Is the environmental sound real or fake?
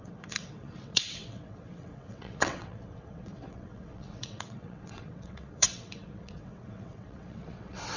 fake